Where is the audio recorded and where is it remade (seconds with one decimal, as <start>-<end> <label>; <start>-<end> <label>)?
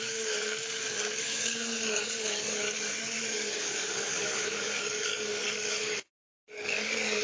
0.0-7.2 remade